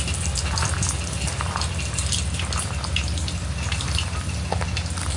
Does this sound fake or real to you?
real